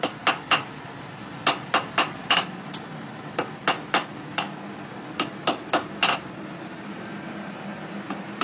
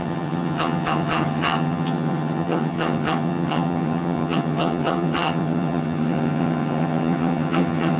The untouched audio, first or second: first